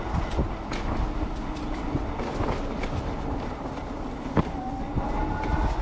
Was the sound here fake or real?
real